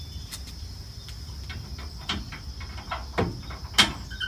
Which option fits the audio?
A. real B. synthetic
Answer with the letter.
A